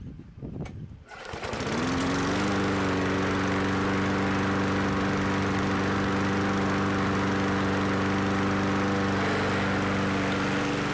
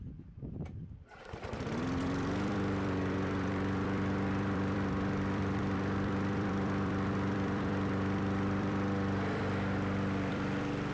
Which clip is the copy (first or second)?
second